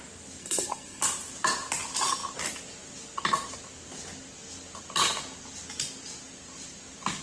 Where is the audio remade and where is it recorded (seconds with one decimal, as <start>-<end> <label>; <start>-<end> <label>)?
0.0-0.4 recorded; 0.4-1.0 remade; 1.0-7.2 recorded